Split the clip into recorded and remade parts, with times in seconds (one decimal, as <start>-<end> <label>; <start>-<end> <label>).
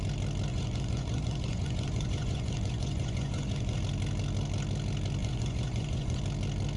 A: 0.0-0.5 recorded; 0.5-3.8 remade; 3.8-5.2 recorded; 5.2-6.2 remade; 6.2-6.8 recorded